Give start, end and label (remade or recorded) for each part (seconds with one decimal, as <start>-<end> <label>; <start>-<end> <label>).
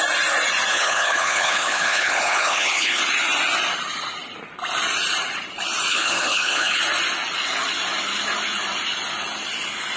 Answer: 0.0-0.7 recorded; 0.7-3.0 remade; 3.0-5.9 recorded; 5.9-6.8 remade; 6.8-10.0 recorded